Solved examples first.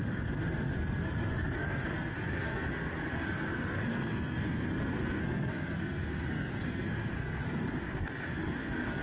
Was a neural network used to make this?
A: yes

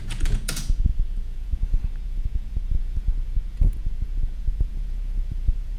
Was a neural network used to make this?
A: yes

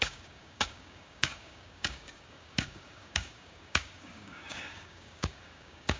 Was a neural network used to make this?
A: yes